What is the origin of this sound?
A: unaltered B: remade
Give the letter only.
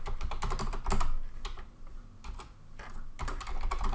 A